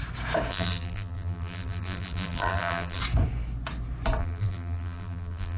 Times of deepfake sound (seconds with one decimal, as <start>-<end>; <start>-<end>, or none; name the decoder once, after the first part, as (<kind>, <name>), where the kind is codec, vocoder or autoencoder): 0.5-3.0 (vocoder, BigVGAN v2); 4.2-5.6